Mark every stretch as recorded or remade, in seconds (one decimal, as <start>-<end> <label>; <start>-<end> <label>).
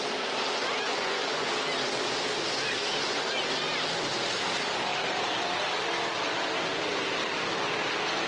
0.0-0.9 recorded; 0.9-1.5 remade; 1.5-8.3 recorded